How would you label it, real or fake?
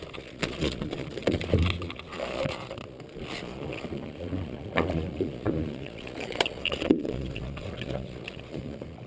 fake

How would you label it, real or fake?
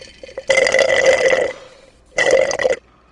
real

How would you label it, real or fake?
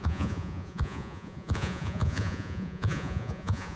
fake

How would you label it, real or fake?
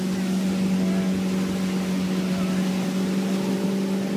real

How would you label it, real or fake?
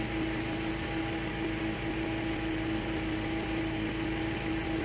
real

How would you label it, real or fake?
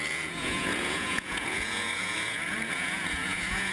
fake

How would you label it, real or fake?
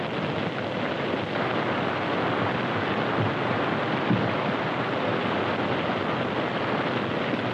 real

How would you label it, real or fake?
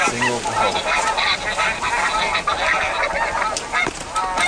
real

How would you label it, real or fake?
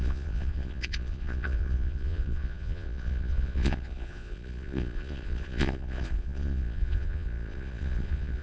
fake